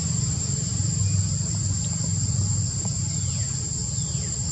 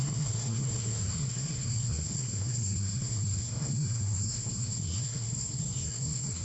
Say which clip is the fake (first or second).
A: second